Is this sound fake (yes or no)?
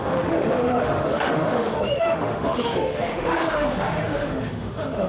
yes